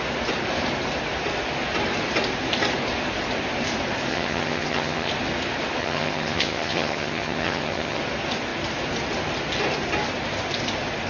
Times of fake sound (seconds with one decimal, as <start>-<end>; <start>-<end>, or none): 4.1-5.1; 5.8-8.0